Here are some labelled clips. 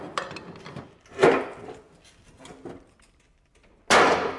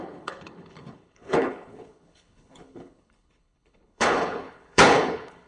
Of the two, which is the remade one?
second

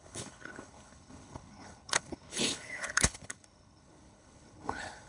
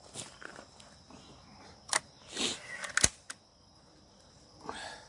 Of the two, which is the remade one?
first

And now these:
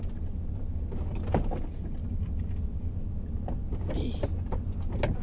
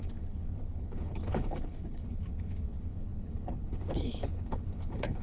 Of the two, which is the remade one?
second